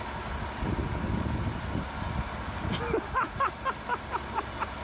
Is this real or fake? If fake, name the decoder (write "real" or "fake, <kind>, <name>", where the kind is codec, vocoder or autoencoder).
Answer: real